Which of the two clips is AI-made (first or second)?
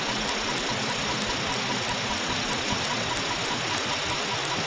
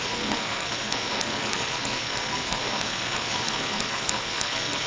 second